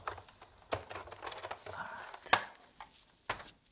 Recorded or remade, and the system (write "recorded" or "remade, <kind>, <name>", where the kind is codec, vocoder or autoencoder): recorded